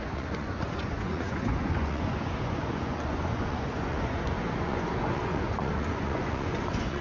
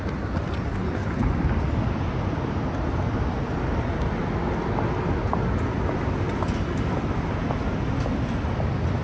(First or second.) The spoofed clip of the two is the first